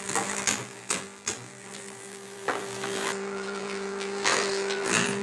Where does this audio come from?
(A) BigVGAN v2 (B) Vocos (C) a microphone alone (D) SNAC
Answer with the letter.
A